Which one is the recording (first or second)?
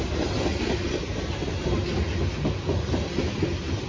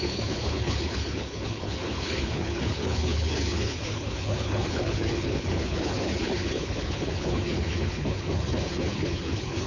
first